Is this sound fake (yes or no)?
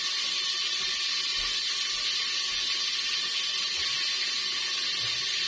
no